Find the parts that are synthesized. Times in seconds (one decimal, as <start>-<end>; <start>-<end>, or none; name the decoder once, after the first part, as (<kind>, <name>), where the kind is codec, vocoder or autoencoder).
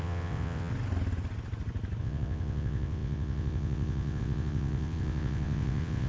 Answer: 0.0-0.7 (vocoder, WaveNeXt); 2.0-6.1